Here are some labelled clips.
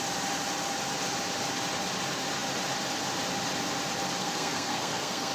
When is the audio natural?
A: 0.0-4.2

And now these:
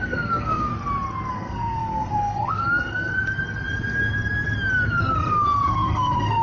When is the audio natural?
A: 0.7-1.3; 3.1-5.0